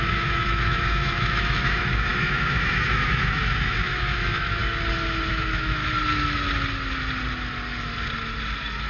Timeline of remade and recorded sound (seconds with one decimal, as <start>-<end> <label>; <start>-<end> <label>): 0.0-4.6 remade; 4.6-5.3 recorded; 5.3-5.8 remade; 5.8-8.9 recorded